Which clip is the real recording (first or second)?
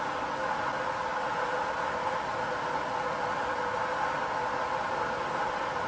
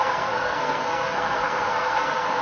first